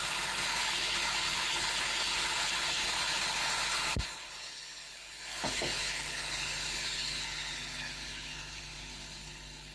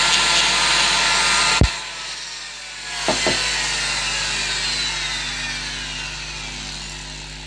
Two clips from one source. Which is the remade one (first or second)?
first